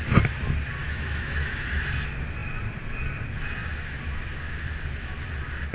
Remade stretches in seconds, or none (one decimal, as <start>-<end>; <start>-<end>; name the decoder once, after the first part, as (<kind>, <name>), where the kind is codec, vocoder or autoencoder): 0.8-1.8 (autoencoder, DAC-VAE)